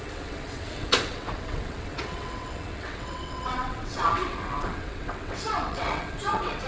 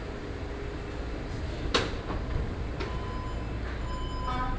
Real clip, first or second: second